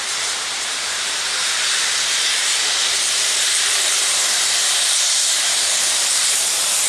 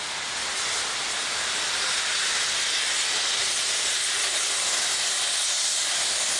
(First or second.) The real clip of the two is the second